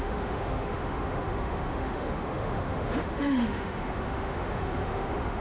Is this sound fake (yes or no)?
yes